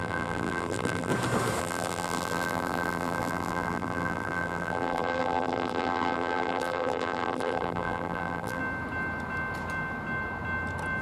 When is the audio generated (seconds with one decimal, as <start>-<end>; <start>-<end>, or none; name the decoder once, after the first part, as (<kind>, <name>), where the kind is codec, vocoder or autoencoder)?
0.0-1.1 (vocoder, BigVGAN v2); 1.6-8.6